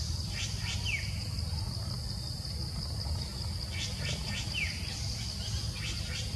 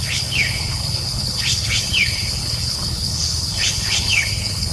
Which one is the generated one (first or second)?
second